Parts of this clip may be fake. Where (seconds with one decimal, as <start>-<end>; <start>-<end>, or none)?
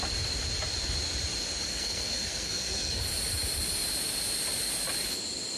1.7-3.0